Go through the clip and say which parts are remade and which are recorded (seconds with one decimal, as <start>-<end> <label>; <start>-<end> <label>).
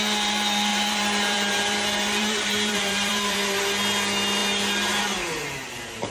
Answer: 0.0-0.7 recorded; 0.7-3.6 remade; 3.6-6.1 recorded